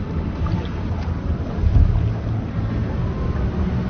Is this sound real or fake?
real